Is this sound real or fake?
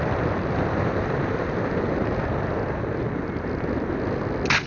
real